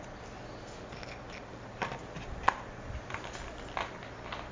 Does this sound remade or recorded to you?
recorded